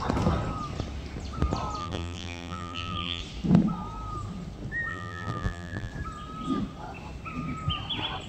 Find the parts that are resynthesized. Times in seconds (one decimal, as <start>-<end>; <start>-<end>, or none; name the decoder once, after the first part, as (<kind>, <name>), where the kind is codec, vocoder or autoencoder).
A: 1.8-3.2 (vocoder, BigVGAN v2); 4.9-5.9